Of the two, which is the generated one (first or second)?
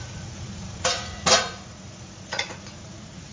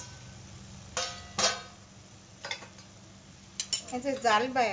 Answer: first